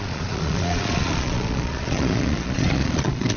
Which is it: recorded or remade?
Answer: remade